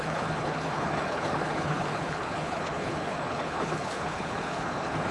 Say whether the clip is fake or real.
fake